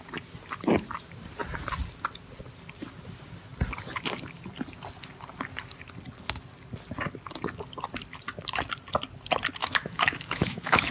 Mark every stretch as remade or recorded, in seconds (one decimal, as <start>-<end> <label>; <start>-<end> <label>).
0.0-9.6 recorded; 9.6-10.9 remade